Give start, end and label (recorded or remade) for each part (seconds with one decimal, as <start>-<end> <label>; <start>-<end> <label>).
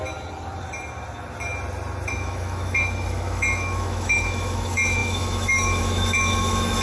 0.0-2.1 recorded; 2.1-6.8 remade